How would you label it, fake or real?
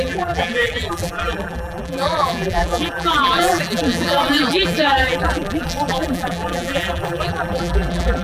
fake